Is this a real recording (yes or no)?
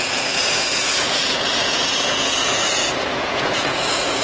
no